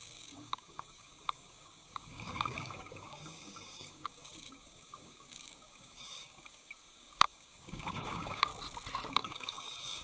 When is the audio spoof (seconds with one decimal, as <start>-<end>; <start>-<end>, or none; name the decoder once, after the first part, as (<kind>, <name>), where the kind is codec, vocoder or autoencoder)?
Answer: 0.0-8.5 (codec, DAC); 9.1-10.0